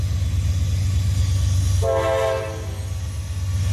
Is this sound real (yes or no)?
yes